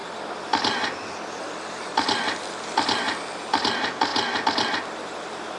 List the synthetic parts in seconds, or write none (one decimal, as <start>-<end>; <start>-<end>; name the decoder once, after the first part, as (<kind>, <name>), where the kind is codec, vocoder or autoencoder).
none